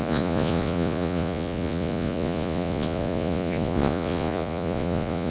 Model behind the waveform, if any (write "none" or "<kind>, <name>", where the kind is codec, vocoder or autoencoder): vocoder, Vocos